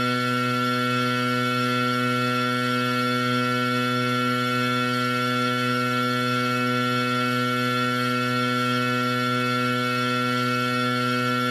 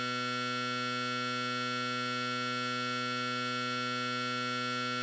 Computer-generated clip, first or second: first